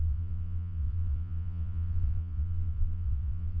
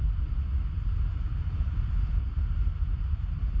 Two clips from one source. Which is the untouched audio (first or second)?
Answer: second